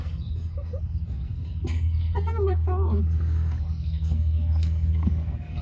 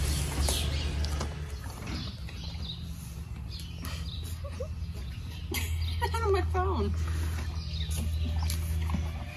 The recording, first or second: second